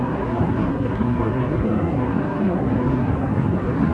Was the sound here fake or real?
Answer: fake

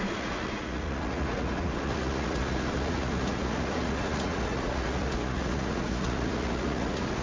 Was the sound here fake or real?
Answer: fake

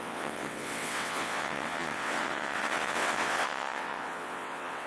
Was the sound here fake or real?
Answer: fake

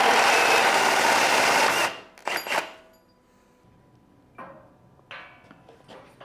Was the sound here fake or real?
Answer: real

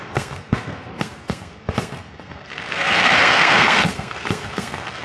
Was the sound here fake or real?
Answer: fake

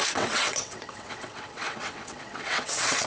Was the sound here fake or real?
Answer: fake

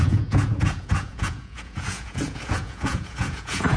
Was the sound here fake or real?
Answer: fake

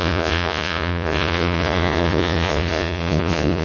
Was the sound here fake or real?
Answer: fake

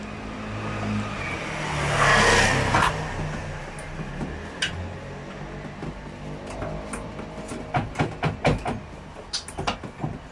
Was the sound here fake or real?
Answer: real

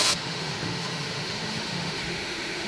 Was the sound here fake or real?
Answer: fake